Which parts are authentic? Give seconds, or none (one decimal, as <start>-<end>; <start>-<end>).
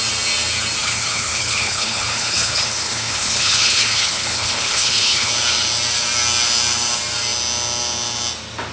0.0-0.8; 5.3-8.7